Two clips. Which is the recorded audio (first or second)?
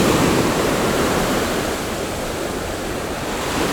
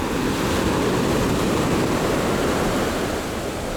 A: second